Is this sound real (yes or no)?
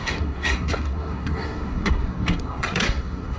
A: no